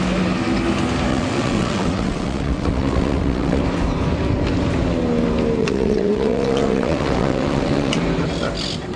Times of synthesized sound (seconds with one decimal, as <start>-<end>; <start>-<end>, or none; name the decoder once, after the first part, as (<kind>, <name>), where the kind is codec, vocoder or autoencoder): 1.1-3.6 (vocoder, WaveNeXt); 5.6-8.0